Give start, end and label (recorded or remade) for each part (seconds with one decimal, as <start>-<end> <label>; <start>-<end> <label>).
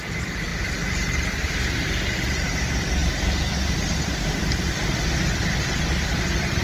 0.0-6.6 recorded